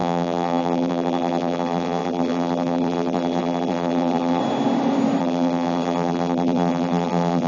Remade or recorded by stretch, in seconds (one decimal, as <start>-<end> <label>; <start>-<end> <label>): 0.0-4.4 remade; 4.4-5.2 recorded; 5.2-7.5 remade